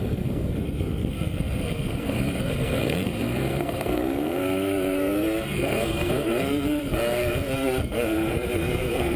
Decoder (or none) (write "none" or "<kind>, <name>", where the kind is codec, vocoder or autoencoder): codec, SNAC